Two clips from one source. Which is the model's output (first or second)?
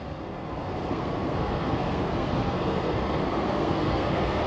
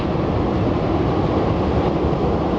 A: first